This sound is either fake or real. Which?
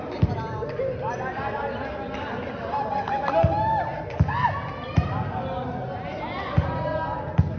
real